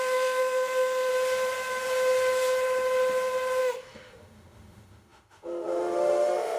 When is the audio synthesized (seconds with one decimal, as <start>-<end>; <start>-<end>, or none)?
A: 0.0-1.1; 3.6-6.6